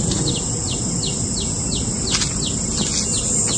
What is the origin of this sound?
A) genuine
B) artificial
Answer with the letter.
A